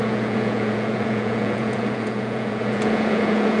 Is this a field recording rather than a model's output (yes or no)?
no